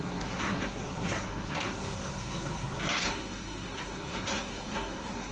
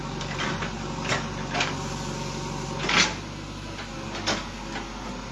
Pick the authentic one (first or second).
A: second